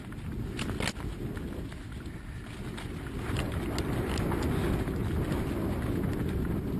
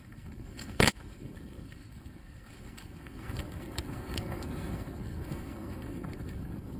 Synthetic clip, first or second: second